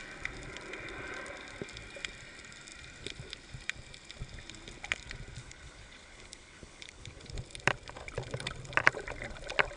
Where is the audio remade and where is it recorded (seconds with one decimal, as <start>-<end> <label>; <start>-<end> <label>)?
0.0-5.4 recorded; 5.4-7.3 remade; 7.3-9.8 recorded